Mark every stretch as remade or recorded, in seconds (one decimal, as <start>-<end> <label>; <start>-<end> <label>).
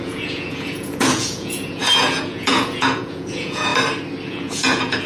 0.0-3.7 remade; 3.7-4.3 recorded; 4.3-5.1 remade